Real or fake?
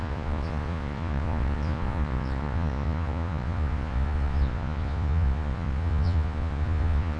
fake